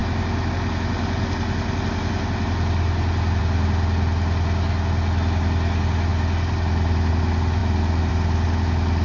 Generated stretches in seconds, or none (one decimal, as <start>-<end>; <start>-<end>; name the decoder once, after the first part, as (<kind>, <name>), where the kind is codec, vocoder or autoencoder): none